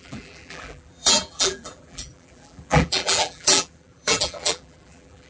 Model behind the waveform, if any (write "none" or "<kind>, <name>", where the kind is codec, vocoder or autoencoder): vocoder, BigVGAN v2